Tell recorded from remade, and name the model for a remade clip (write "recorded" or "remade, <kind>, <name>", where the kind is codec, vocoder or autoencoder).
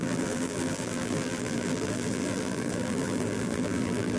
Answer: remade, vocoder, BigVGAN v2